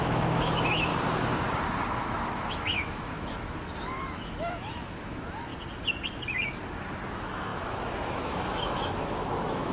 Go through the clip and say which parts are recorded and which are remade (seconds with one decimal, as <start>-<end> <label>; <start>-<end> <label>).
0.0-0.9 remade; 0.9-1.9 recorded; 1.9-5.5 remade; 5.5-7.1 recorded; 7.1-9.7 remade